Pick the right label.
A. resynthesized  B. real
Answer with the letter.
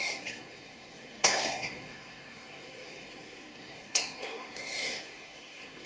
A